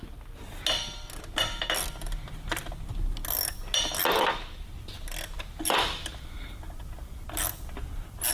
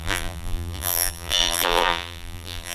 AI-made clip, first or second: second